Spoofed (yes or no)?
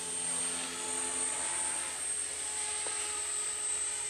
no